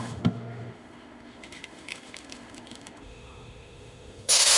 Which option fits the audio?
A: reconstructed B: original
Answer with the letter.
A